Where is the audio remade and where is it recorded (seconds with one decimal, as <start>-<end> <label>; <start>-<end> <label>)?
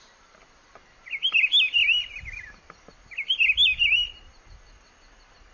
0.0-5.5 recorded